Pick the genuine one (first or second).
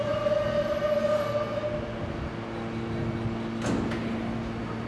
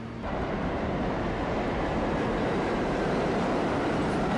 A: first